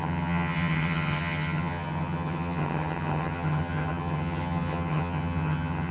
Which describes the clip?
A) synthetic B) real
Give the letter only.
A